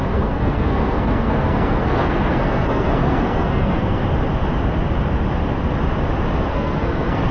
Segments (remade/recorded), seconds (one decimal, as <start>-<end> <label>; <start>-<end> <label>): 0.0-4.0 remade; 4.0-6.5 recorded; 6.5-7.3 remade